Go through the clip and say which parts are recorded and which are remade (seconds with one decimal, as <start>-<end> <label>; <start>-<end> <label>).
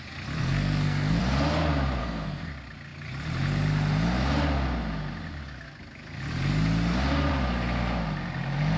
0.0-0.4 recorded; 0.4-1.2 remade; 1.2-2.0 recorded; 2.0-2.5 remade; 2.5-8.8 recorded